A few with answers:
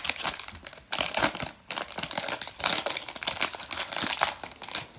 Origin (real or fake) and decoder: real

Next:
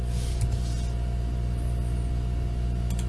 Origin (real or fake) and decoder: real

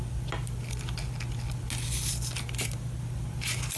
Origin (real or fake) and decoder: real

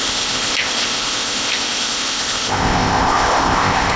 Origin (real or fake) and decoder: fake, codec, ZipCodec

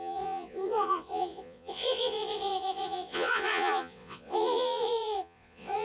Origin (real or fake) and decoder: fake, vocoder, Vocos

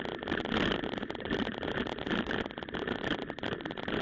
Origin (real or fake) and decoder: real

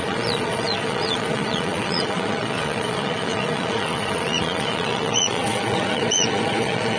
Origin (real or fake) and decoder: fake, vocoder, Vocos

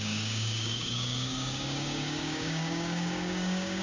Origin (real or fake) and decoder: fake, codec, DAC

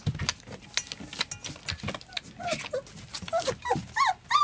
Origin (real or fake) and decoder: real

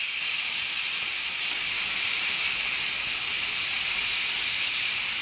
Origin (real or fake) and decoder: fake, vocoder, BigVGAN v2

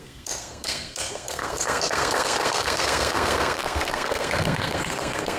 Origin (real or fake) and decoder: fake, codec, SNAC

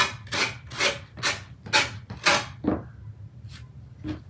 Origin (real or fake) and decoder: real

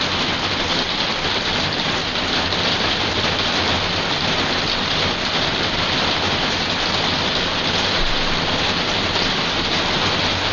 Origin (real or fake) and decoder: real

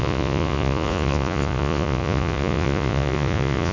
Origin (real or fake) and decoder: fake, vocoder, Vocos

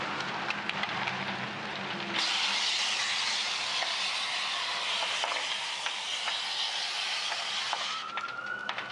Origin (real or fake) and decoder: real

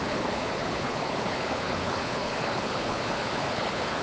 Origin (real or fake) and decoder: fake, codec, HILCodec